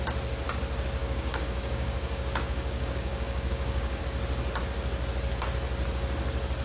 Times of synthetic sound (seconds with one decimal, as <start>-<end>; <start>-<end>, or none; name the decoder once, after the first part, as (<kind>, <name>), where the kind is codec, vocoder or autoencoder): 1.0-4.0 (codec, DAC)